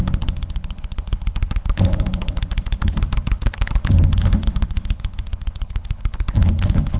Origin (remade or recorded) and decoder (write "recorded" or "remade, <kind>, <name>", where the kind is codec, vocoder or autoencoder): remade, codec, HILCodec